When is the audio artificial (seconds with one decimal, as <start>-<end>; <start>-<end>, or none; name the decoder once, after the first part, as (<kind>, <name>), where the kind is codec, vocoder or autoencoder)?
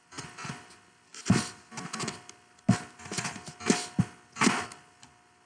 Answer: none